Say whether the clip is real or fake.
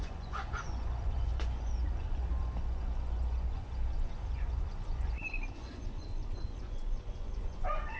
fake